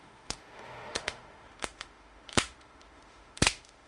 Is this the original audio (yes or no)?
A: no